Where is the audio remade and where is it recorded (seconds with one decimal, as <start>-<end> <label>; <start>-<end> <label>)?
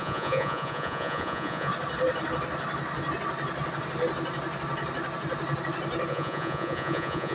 0.0-1.7 remade; 1.7-6.1 recorded; 6.1-7.3 remade